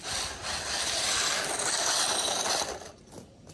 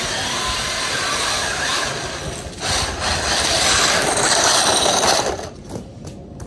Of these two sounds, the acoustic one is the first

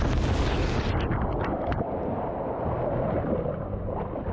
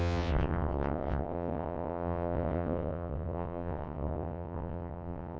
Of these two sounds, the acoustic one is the first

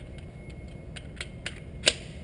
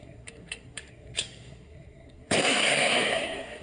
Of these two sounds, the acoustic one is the first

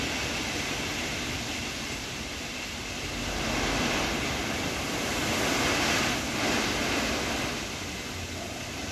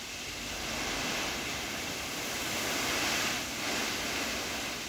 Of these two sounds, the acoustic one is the first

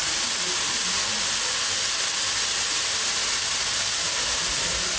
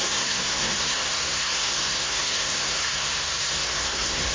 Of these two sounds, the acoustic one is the first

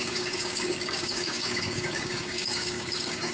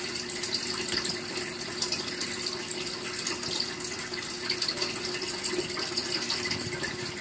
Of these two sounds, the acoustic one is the second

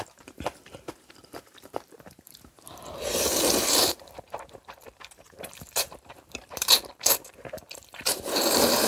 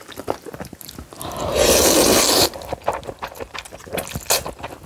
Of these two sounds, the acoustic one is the second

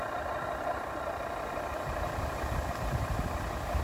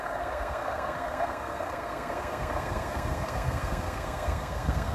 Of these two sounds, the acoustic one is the first